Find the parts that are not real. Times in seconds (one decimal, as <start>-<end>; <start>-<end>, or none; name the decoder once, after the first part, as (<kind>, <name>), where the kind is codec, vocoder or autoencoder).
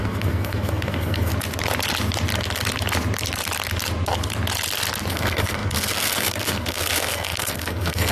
0.0-1.3 (codec, SNAC); 5.1-8.1